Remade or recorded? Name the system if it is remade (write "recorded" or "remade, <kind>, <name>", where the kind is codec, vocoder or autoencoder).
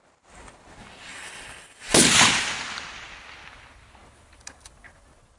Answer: recorded